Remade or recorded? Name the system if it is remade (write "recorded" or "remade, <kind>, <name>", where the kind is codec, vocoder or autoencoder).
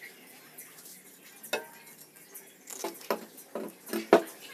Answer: recorded